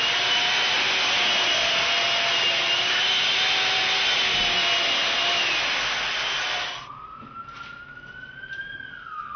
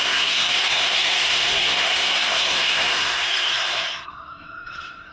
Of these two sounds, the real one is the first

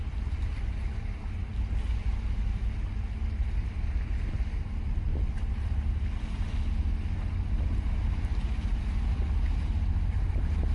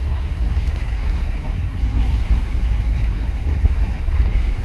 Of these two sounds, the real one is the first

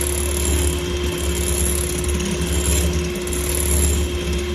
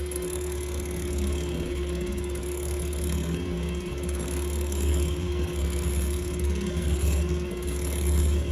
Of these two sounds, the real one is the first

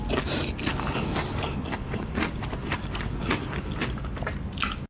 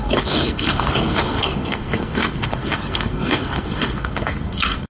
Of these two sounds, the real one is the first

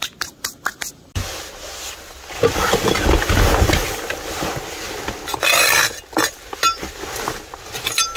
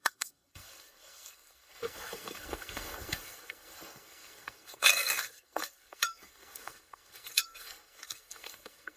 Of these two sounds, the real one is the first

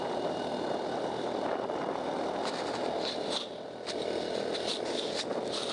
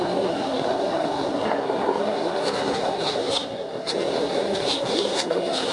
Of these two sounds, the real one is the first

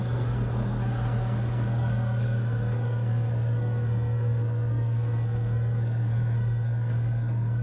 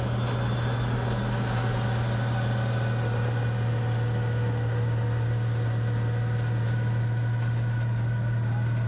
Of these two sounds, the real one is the second